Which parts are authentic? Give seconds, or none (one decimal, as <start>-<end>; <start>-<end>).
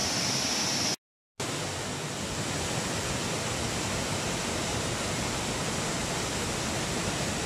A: 0.0-4.6; 5.4-7.5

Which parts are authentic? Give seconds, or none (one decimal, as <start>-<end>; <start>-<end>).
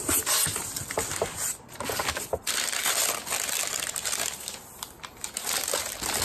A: 0.0-1.3; 2.5-6.2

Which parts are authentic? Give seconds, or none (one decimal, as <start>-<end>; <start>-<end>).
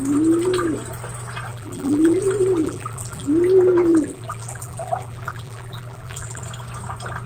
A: 0.0-1.5; 2.2-2.6; 3.3-3.9; 6.4-7.3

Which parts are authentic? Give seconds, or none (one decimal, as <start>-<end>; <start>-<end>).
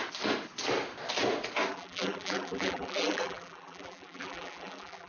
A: 0.0-1.7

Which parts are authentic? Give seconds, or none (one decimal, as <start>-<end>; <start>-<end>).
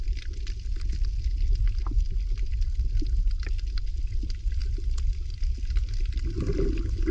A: 0.0-7.1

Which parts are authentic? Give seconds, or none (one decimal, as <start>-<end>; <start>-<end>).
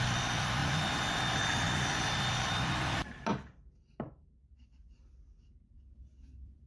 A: 0.0-3.0; 4.5-6.7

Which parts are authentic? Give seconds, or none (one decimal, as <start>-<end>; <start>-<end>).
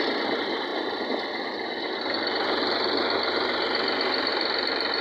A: 0.0-4.3